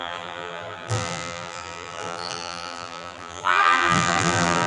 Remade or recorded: remade